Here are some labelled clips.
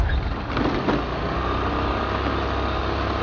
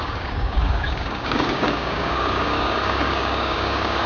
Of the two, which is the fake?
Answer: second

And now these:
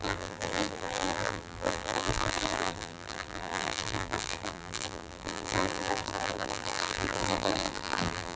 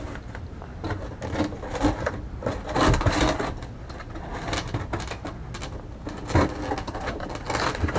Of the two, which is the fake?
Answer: first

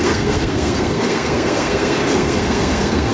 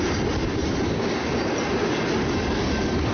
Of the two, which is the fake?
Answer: first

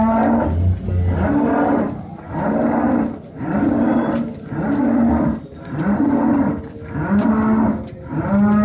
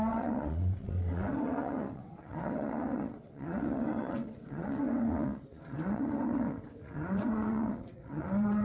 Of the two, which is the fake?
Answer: second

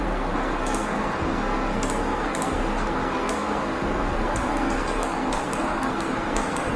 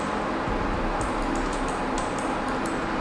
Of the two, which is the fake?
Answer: first